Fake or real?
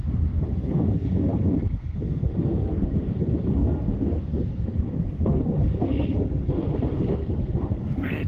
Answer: fake